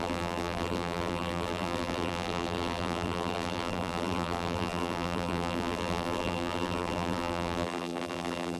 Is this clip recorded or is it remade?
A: remade